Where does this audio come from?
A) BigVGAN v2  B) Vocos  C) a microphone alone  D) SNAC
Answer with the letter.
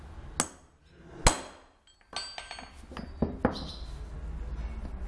C